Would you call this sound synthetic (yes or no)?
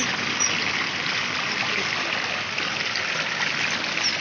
no